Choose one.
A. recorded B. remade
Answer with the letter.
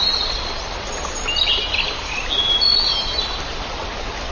A